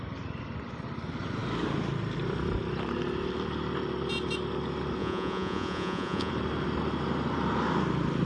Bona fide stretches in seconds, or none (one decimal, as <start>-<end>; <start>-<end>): 0.0-5.0; 6.3-8.3